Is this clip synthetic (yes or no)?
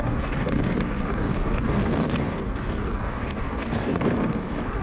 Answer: yes